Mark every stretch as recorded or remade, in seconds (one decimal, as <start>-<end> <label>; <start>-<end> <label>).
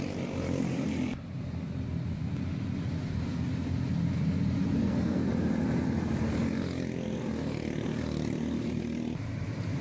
0.0-4.8 recorded; 4.8-5.3 remade; 5.3-9.8 recorded